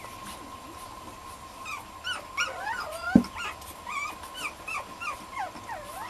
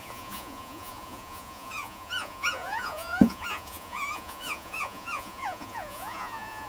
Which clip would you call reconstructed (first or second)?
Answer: second